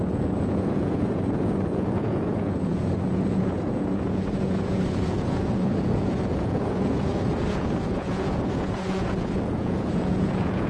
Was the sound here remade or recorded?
remade